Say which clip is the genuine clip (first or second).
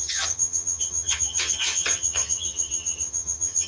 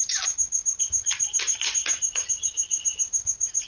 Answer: second